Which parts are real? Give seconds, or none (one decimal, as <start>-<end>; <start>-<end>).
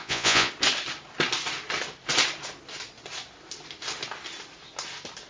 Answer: 0.5-5.3